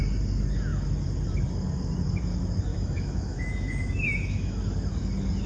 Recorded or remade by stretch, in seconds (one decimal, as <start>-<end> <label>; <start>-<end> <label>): 0.0-2.7 recorded; 2.7-4.6 remade; 4.6-5.5 recorded